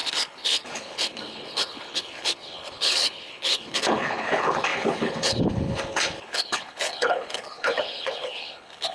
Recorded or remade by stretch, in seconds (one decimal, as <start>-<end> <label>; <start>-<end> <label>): 0.0-8.9 remade